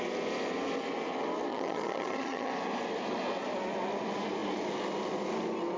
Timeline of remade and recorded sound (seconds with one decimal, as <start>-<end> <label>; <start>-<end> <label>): 0.0-1.5 recorded; 1.5-2.5 remade; 2.5-5.8 recorded

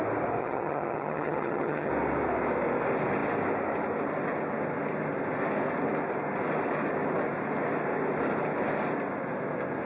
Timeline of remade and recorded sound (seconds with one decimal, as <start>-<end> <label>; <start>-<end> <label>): 0.0-0.4 recorded; 0.4-1.9 remade; 1.9-9.9 recorded

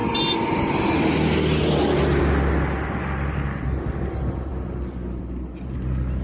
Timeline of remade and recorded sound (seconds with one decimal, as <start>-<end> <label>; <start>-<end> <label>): 0.0-6.2 recorded